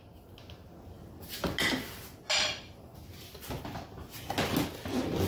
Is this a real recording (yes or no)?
yes